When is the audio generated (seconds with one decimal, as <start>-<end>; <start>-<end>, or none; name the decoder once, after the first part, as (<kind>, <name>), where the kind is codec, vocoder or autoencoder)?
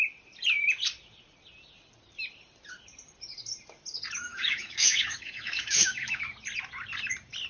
4.3-6.2 (autoencoder, DAC-VAE)